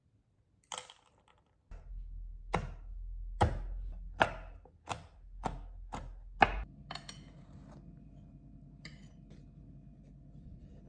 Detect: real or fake real